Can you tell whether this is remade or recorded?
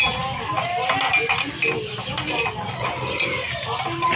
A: recorded